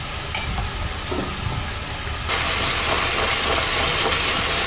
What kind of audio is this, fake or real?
real